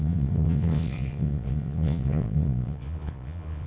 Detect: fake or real fake